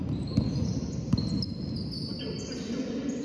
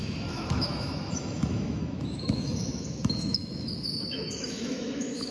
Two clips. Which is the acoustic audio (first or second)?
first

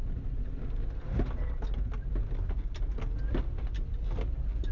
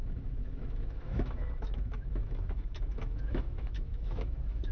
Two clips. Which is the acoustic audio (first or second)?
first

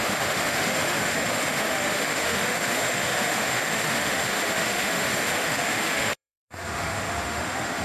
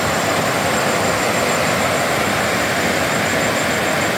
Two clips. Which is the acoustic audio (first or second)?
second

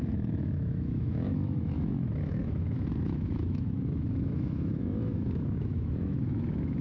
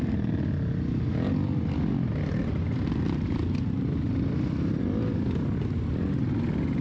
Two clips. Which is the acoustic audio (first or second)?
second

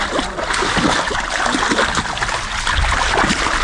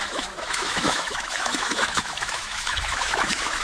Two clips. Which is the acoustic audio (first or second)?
first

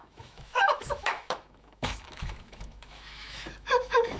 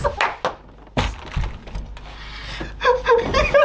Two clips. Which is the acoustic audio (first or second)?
second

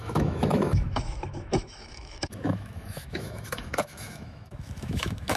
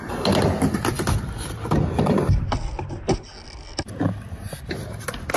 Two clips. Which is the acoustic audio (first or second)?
second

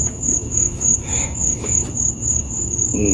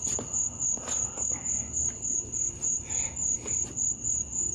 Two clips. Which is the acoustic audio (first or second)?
second